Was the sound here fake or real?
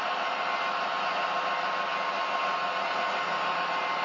real